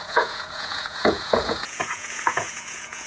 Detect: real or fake fake